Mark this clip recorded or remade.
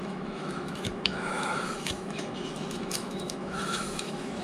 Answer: remade